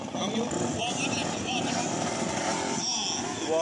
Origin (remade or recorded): recorded